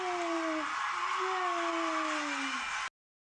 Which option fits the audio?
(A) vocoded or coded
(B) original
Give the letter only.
B